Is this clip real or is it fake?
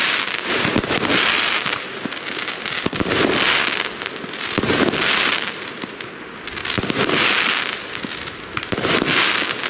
real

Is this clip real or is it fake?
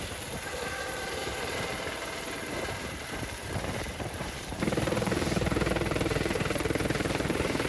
fake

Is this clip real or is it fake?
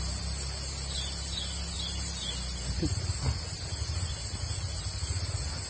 real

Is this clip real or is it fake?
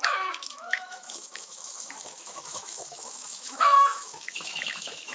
fake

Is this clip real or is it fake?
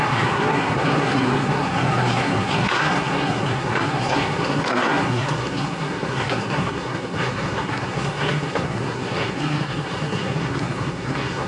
fake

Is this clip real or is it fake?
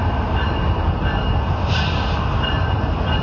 real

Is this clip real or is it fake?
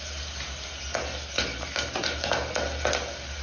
real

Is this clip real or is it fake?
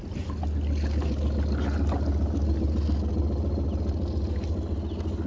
real